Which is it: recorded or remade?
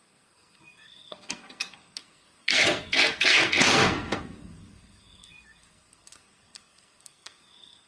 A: remade